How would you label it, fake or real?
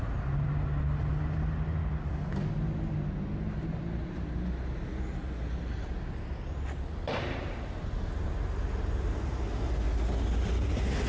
real